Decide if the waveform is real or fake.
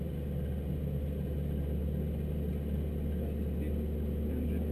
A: real